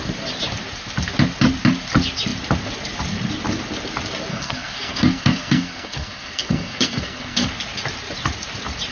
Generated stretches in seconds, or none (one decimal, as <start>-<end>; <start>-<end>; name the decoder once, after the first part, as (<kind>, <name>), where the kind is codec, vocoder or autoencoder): 4.3-7.5 (codec, SNAC)